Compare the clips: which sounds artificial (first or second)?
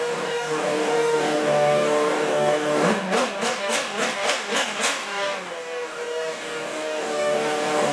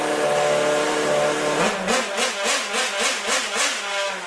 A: first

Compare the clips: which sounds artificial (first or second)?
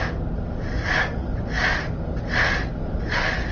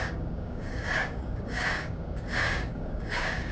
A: second